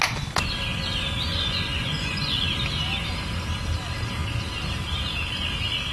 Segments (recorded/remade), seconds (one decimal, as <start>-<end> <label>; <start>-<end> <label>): 0.0-1.3 recorded; 1.3-2.5 remade; 2.5-5.9 recorded